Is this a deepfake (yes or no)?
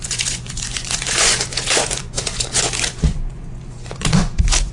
yes